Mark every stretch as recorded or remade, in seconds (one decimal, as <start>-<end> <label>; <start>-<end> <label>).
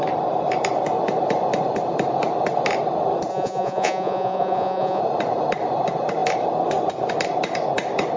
0.0-3.3 recorded; 3.3-5.0 remade; 5.0-8.2 recorded